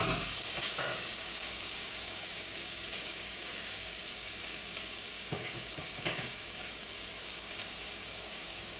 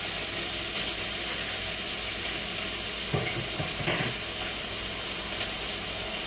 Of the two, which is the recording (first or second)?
second